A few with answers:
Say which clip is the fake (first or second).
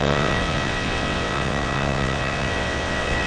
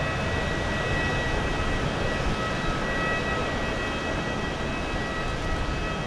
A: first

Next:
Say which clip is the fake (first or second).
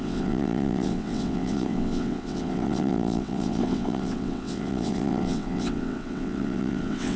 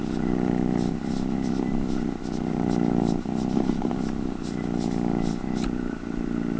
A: first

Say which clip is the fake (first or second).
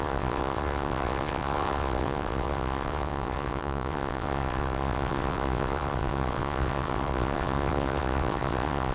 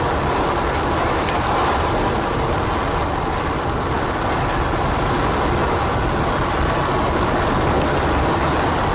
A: first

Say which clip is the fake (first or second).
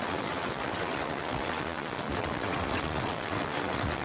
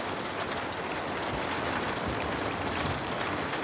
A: first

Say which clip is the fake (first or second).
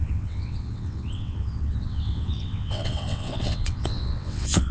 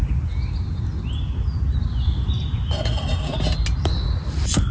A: first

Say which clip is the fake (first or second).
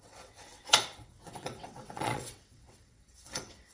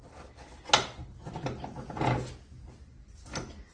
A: first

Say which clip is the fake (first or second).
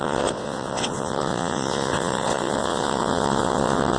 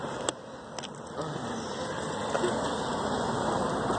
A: first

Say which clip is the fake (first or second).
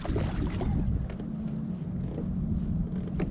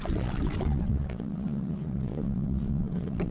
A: second